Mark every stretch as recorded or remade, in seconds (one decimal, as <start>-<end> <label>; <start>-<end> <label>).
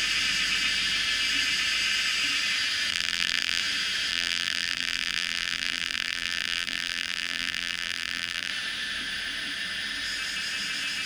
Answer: 0.0-2.9 recorded; 2.9-3.6 remade; 3.6-4.1 recorded; 4.1-8.5 remade; 8.5-11.1 recorded